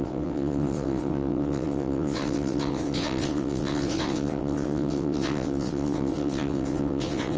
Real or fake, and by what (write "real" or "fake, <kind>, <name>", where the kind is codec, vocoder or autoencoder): fake, vocoder, WaveNeXt